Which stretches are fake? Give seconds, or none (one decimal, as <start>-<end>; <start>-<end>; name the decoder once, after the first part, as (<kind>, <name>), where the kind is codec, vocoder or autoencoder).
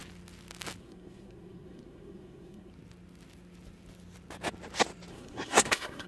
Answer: 0.8-2.7 (codec, SNAC); 5.1-6.1